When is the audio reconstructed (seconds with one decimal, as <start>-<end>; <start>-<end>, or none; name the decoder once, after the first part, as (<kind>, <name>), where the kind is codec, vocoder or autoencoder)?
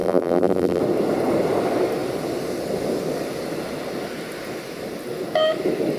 0.0-0.8 (vocoder, BigVGAN v2)